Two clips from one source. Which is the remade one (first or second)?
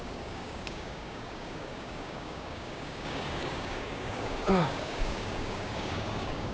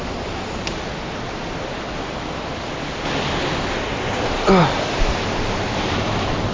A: first